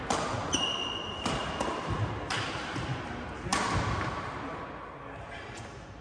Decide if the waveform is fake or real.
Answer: real